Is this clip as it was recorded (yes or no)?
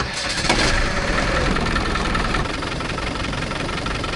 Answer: no